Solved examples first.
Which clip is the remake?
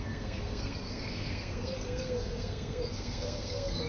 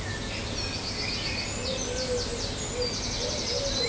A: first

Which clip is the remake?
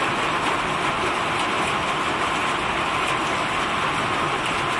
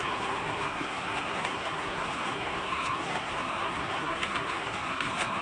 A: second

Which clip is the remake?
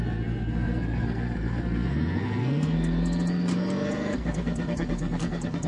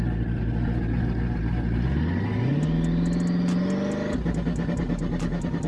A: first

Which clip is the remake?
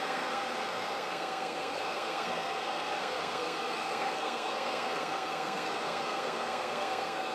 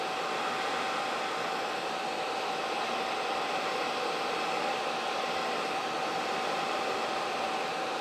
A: first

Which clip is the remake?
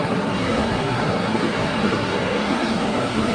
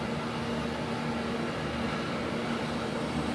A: first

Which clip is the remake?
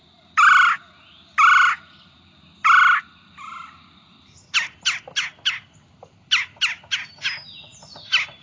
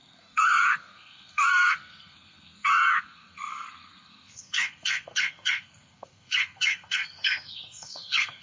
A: second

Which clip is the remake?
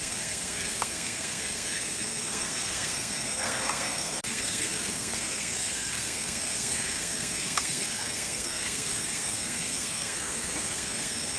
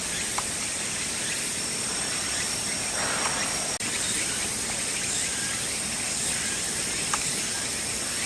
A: first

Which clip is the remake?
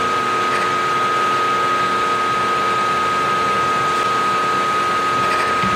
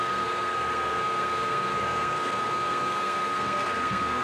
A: second